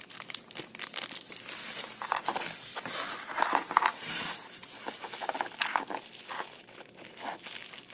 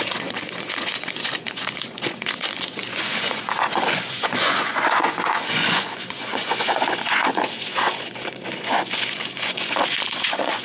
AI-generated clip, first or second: second